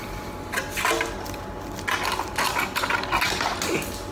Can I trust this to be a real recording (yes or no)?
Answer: yes